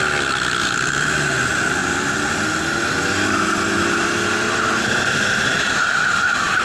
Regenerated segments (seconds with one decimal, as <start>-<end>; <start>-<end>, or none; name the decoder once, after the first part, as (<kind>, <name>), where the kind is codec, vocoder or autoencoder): none